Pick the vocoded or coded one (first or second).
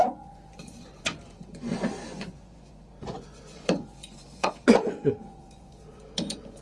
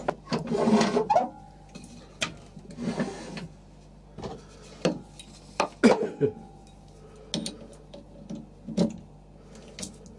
first